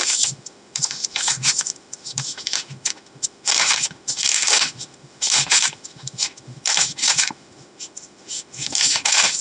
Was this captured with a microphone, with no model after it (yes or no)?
no